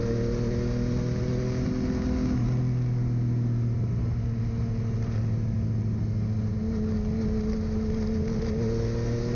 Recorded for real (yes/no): yes